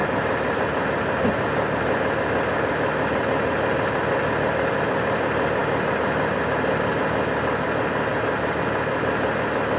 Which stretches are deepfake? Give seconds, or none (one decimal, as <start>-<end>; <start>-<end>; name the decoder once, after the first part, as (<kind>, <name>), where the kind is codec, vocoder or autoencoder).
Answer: none